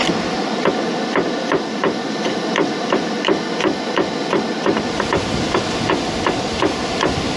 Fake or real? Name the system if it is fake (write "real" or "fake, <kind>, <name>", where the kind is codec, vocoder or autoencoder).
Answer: real